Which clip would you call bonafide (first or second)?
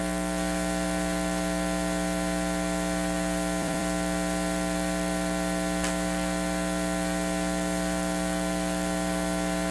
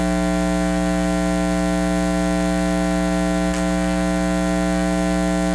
second